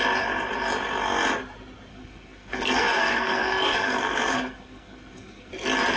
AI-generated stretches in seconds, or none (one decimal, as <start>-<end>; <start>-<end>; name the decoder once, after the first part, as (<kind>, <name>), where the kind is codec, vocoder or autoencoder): 1.9-5.5 (codec, SNAC)